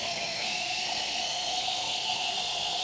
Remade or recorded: remade